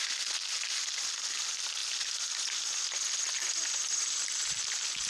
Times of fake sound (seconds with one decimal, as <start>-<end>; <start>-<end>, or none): none